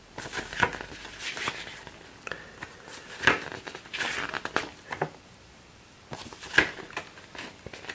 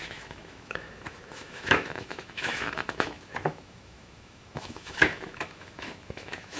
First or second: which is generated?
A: second